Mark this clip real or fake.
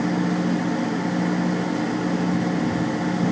real